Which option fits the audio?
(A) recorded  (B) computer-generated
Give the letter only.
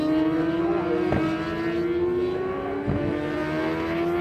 A